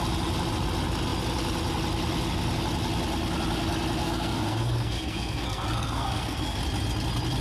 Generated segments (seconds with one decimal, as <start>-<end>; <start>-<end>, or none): 4.0-6.6